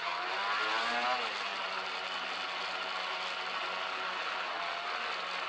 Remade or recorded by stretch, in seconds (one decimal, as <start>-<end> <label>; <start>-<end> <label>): 0.0-5.5 recorded